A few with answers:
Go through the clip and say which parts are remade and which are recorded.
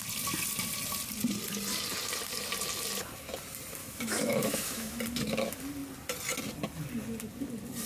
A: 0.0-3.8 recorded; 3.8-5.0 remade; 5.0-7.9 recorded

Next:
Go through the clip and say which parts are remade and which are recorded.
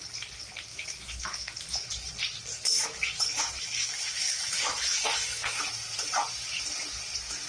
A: 0.0-0.7 recorded; 0.7-2.1 remade; 2.1-2.5 recorded; 2.5-5.6 remade; 5.6-7.5 recorded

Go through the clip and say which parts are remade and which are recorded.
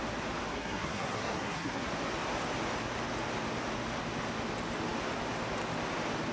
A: 0.0-0.5 recorded; 0.5-1.9 remade; 1.9-6.3 recorded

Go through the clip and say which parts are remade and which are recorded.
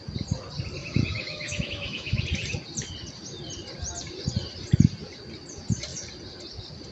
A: 0.0-0.8 recorded; 0.8-2.2 remade; 2.2-6.9 recorded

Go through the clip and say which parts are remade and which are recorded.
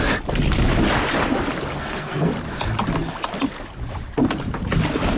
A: 0.0-1.7 recorded; 1.7-2.3 remade; 2.3-5.2 recorded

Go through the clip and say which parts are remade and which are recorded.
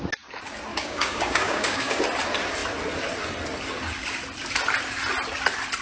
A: 0.0-0.7 recorded; 0.7-2.0 remade; 2.0-5.8 recorded